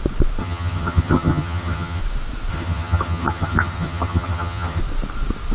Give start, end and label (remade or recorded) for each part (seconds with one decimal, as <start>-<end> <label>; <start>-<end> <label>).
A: 0.0-0.4 recorded; 0.4-2.0 remade; 2.0-2.5 recorded; 2.5-4.8 remade; 4.8-5.5 recorded